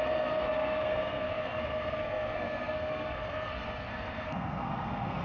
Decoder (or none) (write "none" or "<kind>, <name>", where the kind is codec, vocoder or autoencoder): codec, SNAC